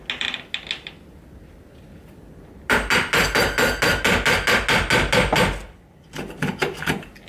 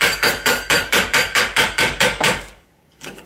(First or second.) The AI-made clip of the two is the second